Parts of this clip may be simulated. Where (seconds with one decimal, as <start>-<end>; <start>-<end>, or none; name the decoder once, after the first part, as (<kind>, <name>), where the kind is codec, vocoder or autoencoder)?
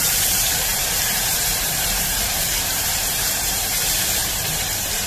0.0-5.1 (vocoder, BigVGAN v2)